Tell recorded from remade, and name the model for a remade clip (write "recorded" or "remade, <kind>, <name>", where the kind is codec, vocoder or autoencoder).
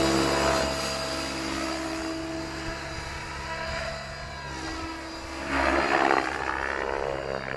recorded